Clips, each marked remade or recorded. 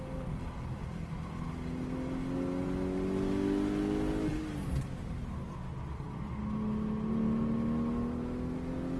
recorded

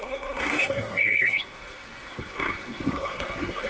remade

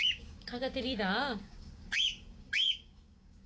remade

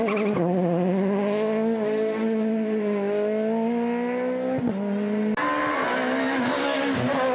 recorded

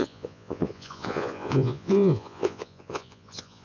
remade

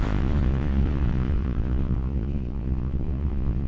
remade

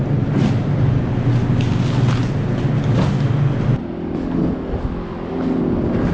recorded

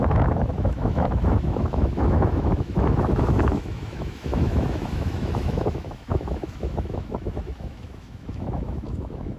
remade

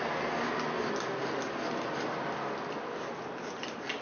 recorded